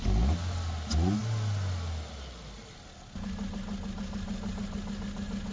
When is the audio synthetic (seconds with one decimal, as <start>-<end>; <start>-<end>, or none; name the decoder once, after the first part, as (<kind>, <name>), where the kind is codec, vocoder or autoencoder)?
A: none